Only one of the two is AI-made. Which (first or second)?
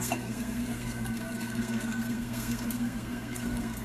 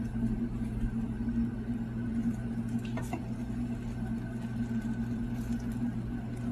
first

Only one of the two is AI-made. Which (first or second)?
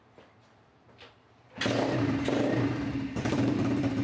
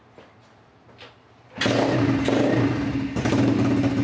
first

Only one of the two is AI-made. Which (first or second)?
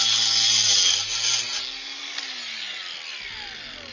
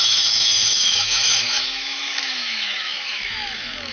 second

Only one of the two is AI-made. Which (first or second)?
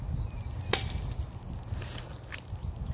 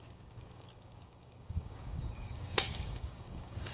second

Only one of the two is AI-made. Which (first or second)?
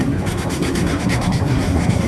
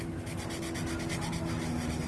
first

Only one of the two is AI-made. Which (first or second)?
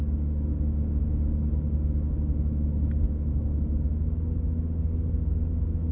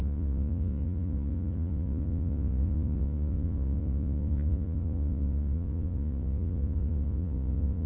second